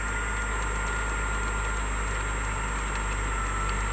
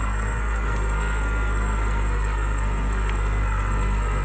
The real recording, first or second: first